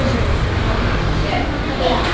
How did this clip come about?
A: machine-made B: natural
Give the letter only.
B